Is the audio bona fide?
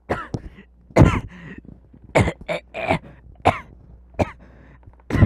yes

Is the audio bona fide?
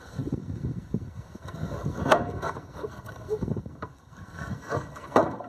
no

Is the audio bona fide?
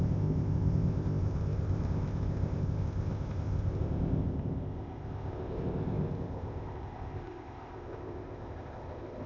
no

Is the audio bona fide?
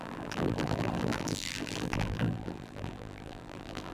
no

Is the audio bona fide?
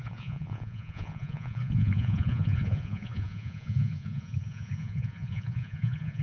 no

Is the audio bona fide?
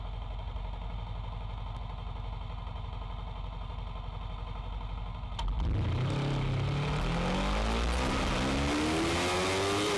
yes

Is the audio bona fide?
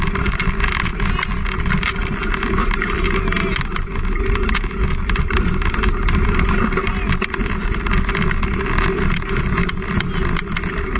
yes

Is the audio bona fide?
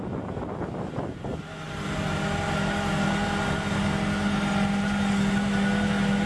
yes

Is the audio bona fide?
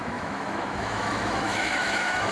no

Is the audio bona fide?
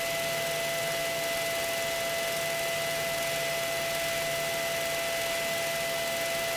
yes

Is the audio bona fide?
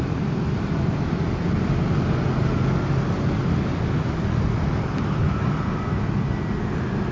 yes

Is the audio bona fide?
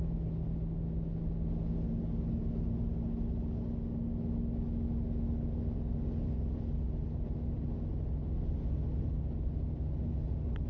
yes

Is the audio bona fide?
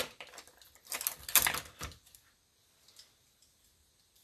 yes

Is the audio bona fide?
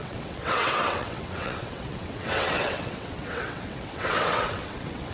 no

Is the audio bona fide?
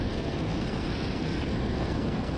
no